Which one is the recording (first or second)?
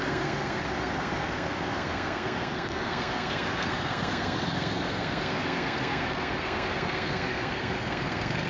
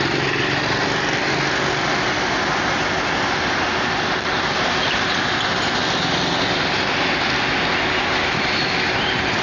second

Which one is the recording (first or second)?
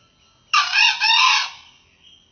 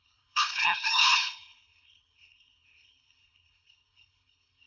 first